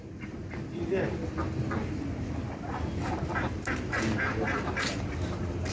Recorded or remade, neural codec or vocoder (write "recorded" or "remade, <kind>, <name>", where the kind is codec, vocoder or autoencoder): recorded